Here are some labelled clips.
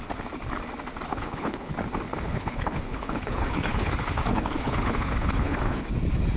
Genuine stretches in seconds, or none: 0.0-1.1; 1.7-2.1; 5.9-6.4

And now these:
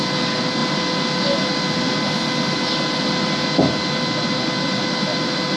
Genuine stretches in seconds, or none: 0.0-5.6

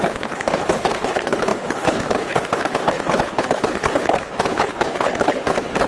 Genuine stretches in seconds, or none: none

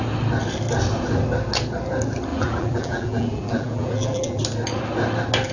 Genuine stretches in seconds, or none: 0.0-2.3; 4.4-5.5